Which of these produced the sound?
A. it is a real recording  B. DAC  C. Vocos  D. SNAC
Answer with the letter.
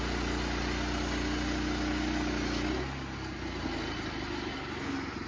A